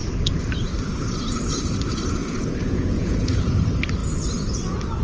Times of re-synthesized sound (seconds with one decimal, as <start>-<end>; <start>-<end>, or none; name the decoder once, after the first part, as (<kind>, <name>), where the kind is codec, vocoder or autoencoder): 2.2-3.5 (vocoder, Vocos)